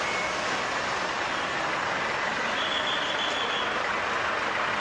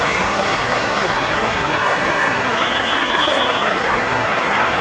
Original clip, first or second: first